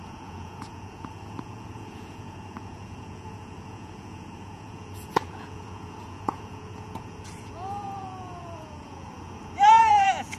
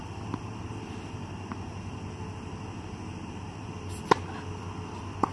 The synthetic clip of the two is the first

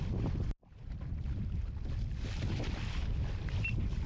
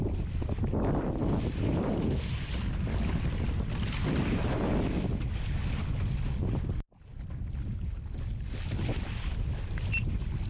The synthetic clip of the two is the first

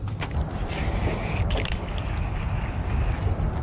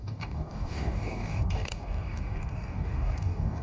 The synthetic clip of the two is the second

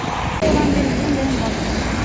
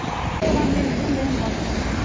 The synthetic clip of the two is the second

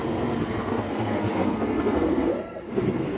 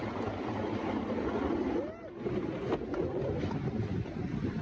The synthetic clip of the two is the first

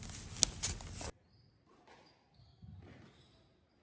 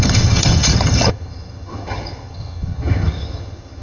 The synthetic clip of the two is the second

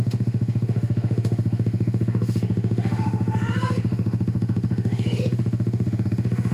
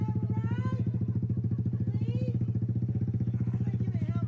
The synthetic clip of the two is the first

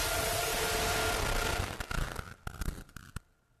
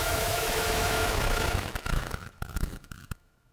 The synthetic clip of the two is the second